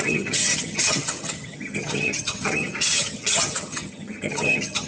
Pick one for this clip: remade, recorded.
remade